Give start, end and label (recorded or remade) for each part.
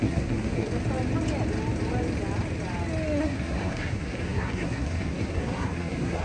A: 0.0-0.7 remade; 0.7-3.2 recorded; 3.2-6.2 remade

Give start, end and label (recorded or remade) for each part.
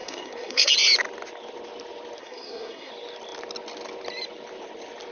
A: 0.0-0.7 remade; 0.7-2.2 recorded; 2.2-2.9 remade; 2.9-5.1 recorded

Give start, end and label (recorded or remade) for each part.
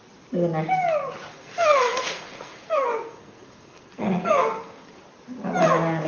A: 0.0-1.3 recorded; 1.3-5.0 remade; 5.0-6.1 recorded